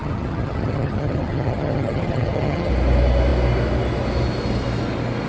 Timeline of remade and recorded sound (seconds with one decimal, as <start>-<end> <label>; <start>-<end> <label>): 0.0-2.7 remade; 2.7-5.3 recorded